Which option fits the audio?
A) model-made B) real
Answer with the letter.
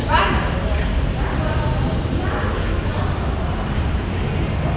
B